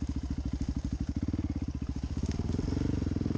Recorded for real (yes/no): yes